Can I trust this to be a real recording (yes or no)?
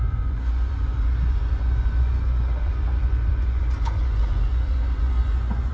no